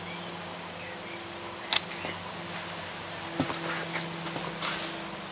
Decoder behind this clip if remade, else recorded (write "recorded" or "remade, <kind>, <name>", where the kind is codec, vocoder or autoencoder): recorded